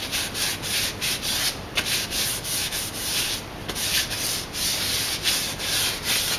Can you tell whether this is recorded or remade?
recorded